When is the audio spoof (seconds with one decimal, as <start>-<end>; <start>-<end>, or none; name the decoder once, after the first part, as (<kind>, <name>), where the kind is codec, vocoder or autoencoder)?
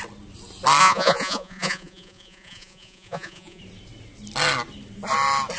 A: 0.8-3.6 (vocoder, Vocos)